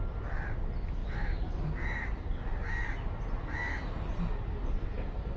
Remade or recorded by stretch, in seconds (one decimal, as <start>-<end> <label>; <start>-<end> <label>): 0.0-5.4 recorded